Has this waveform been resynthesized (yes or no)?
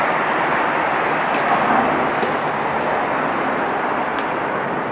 no